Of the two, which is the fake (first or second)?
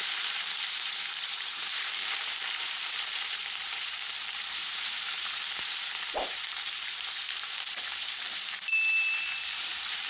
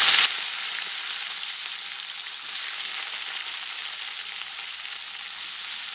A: first